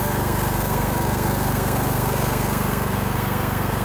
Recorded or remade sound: remade